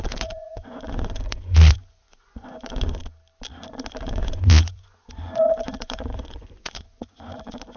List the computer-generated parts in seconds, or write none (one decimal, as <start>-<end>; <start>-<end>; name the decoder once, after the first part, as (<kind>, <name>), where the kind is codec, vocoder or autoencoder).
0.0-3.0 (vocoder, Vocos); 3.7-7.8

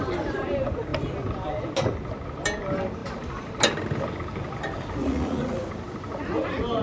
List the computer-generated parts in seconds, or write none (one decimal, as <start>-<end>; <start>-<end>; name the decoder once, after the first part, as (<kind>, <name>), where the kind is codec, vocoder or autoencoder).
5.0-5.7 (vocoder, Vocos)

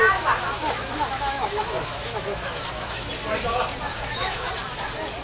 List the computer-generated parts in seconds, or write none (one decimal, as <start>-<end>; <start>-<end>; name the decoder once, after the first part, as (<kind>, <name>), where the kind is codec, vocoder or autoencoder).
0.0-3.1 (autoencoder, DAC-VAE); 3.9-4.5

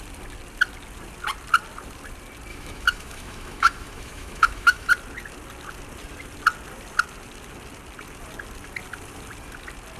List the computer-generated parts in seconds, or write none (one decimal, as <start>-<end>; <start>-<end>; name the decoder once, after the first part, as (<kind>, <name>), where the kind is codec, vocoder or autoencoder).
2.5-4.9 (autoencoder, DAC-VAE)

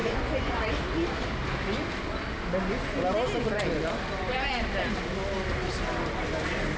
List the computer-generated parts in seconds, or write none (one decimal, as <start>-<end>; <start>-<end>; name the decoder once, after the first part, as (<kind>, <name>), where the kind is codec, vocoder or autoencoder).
0.0-0.6 (vocoder, Vocos)

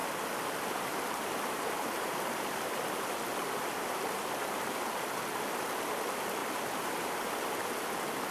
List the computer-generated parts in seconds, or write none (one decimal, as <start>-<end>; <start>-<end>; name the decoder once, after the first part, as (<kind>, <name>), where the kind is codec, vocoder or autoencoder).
0.0-5.0 (vocoder, BigVGAN v2); 6.4-6.9

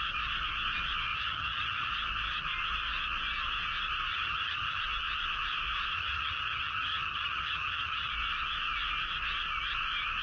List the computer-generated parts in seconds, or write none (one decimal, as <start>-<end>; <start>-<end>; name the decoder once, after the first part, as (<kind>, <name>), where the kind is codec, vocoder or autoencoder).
1.1-1.9 (vocoder, HiFi-GAN); 4.1-4.8; 5.9-8.1